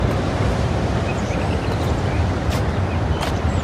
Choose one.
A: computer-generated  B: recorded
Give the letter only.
A